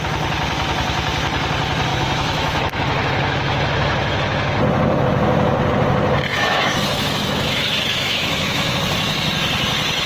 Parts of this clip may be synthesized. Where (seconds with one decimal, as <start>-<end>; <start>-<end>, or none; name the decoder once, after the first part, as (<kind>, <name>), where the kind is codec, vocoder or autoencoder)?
1.9-4.6 (autoencoder, DAC-VAE); 6.3-8.8